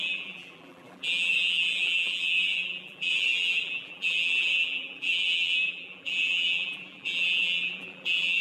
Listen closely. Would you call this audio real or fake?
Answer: fake